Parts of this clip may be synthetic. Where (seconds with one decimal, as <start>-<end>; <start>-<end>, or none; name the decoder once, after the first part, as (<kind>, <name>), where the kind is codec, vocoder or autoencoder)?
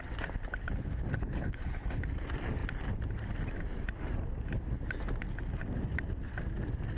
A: 1.1-2.0 (codec, HILCodec)